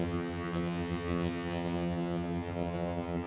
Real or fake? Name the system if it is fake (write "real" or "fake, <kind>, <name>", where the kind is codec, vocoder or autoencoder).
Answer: fake, vocoder, HiFi-GAN